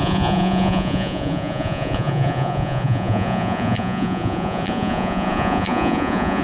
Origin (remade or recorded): remade